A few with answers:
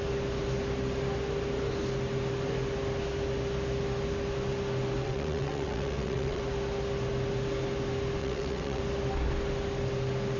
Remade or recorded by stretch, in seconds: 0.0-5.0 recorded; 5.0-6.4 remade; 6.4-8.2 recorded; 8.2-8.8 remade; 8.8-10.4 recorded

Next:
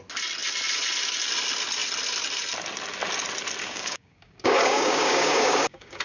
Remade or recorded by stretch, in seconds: 0.0-3.6 recorded; 3.6-6.0 remade

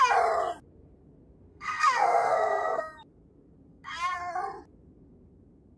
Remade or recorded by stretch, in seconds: 0.0-1.5 recorded; 1.5-2.8 remade; 2.8-3.7 recorded; 3.7-4.2 remade; 4.2-5.8 recorded